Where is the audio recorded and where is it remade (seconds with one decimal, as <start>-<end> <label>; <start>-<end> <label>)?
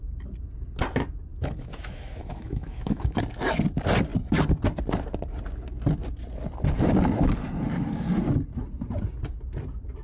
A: 0.0-1.3 recorded; 1.3-3.2 remade; 3.2-10.0 recorded